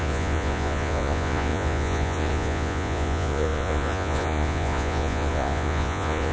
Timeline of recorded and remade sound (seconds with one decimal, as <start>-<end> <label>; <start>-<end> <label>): 0.0-6.3 remade